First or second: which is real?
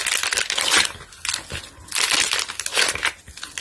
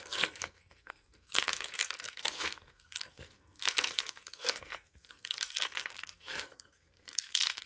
first